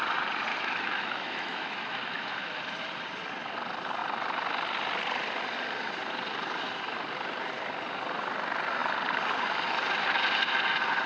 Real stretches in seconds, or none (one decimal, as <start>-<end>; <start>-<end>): 0.0-0.5; 2.6-11.1